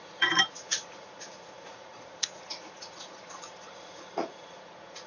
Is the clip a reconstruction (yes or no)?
yes